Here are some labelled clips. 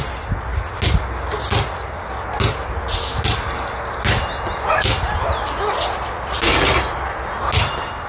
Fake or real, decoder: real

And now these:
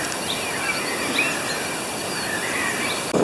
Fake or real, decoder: real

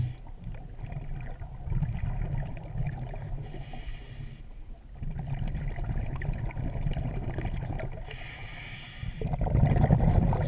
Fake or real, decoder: real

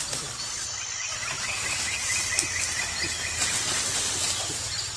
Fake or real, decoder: real